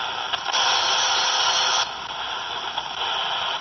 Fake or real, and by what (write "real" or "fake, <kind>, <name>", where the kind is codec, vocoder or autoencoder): real